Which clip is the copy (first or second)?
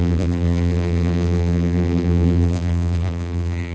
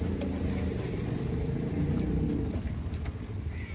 first